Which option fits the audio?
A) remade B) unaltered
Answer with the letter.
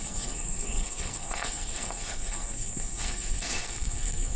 A